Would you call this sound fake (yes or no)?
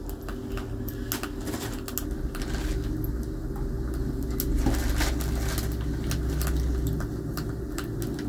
no